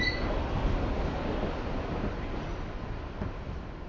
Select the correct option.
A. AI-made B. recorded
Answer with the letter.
B